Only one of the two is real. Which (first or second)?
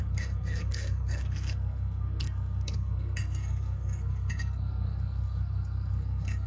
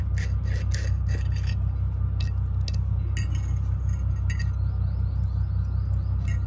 second